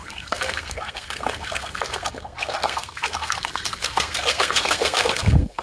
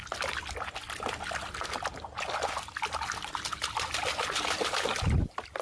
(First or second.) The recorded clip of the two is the second